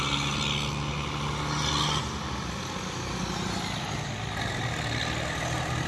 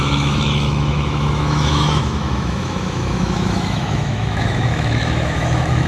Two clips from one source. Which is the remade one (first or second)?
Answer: second